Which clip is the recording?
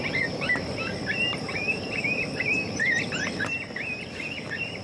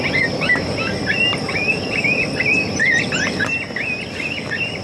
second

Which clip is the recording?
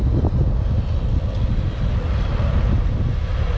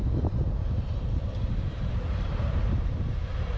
first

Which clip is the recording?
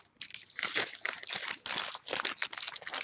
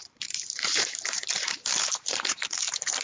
first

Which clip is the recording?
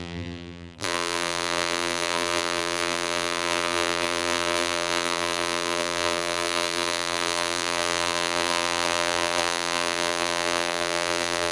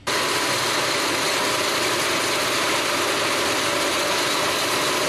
second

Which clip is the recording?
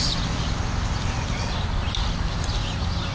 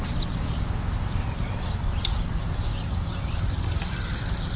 first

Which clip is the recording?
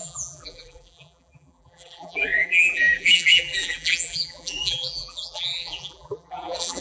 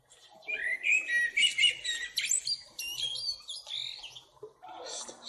second